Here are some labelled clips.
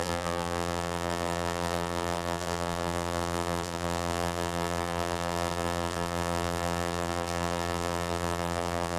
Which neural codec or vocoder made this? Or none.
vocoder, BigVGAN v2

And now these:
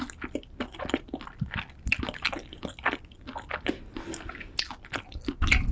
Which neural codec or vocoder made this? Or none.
none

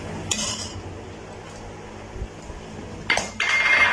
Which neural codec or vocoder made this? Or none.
none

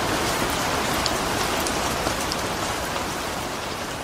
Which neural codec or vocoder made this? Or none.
none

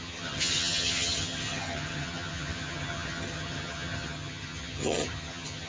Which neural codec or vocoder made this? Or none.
vocoder, HiFi-GAN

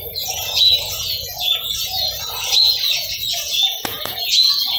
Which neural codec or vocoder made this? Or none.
vocoder, Vocos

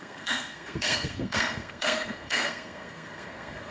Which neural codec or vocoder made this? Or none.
codec, SNAC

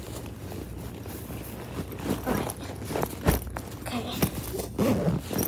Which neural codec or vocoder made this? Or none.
none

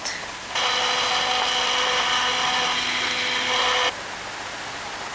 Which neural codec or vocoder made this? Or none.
none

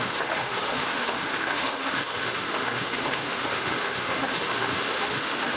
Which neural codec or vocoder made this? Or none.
autoencoder, DAC-VAE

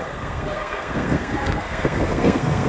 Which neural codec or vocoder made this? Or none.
codec, SNAC